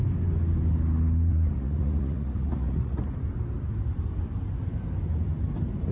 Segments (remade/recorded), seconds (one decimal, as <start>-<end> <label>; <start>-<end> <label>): 0.0-1.3 recorded; 1.3-3.0 remade; 3.0-5.9 recorded